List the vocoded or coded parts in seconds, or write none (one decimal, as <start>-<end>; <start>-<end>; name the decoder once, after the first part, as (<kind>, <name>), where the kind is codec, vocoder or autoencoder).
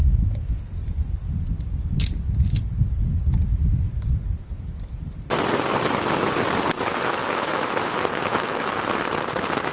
0.0-0.5 (autoencoder, DAC-VAE); 7.2-8.7